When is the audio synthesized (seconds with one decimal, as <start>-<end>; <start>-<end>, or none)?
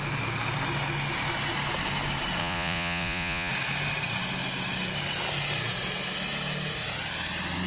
2.4-3.5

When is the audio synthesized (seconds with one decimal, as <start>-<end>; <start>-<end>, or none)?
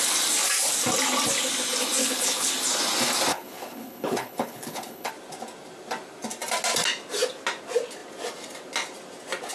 2.0-2.5; 3.3-5.1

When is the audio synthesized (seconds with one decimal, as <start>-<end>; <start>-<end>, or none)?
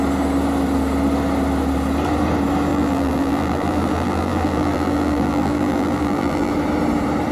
2.7-6.5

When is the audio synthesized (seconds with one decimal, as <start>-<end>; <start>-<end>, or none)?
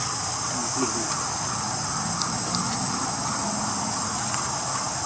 none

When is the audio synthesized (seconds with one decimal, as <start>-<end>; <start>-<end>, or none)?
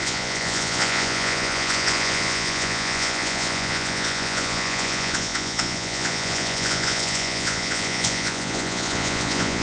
0.0-9.6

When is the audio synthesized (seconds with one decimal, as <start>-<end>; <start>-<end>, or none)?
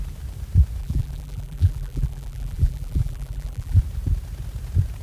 0.8-3.8